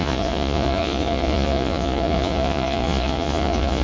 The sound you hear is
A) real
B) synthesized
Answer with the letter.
B